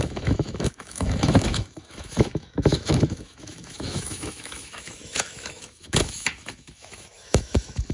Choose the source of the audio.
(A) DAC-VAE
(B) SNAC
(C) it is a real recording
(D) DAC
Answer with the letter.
A